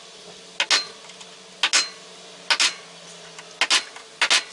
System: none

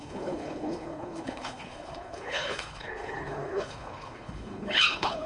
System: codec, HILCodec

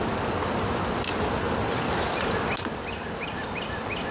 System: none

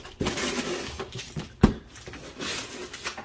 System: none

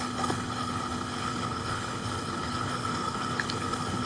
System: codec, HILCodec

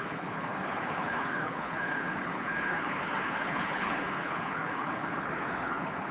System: codec, HILCodec